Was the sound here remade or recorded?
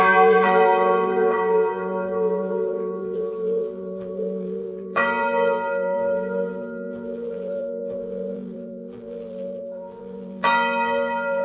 remade